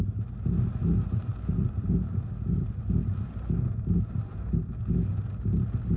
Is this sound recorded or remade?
recorded